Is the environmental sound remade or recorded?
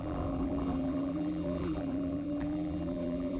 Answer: remade